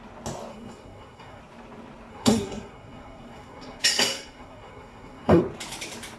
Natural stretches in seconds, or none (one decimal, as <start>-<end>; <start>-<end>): 0.0-0.5; 1.4-2.1; 5.4-6.2